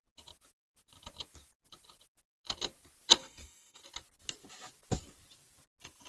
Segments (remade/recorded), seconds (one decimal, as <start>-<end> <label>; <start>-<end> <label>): 0.0-3.2 recorded; 3.2-3.8 remade; 3.8-6.1 recorded